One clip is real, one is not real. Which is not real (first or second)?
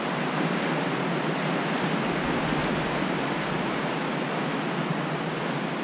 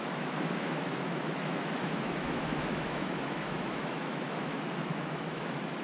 second